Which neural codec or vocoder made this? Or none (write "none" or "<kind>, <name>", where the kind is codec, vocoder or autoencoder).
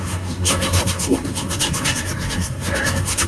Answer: codec, SNAC